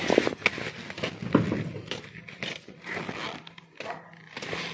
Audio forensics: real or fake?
real